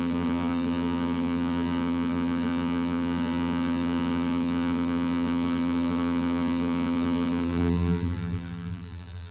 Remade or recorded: remade